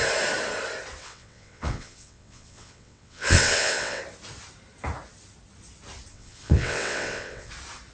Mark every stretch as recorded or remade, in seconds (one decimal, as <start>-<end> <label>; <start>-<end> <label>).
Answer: 0.0-1.0 recorded; 1.0-4.0 remade; 4.0-6.1 recorded; 6.1-7.5 remade; 7.5-7.9 recorded